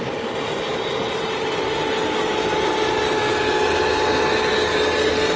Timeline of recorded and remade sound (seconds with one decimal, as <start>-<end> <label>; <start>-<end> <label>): 0.0-5.4 recorded